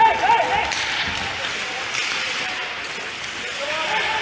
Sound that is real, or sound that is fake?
real